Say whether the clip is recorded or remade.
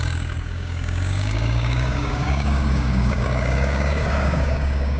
remade